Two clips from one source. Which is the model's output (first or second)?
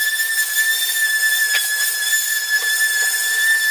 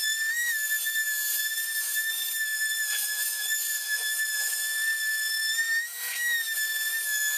second